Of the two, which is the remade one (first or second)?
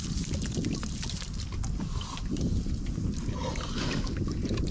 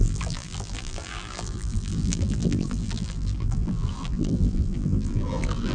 second